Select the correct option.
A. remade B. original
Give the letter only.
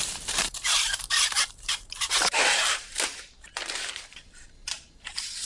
A